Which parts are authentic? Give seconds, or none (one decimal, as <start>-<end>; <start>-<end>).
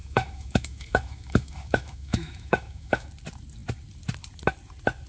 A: 3.1-5.1